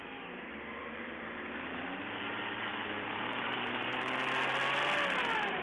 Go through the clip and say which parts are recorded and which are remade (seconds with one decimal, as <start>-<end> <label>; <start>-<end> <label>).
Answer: 0.0-0.8 recorded; 0.8-1.8 remade; 1.8-2.7 recorded; 2.7-3.9 remade; 3.9-5.6 recorded